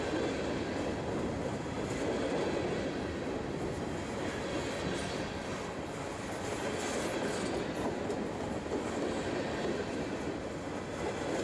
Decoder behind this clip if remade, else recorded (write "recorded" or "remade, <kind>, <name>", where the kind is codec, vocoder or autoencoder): recorded